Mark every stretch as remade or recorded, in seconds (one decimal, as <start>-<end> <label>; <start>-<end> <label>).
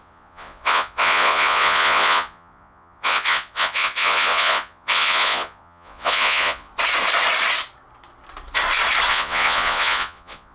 0.0-6.7 remade; 6.7-9.1 recorded; 9.1-10.5 remade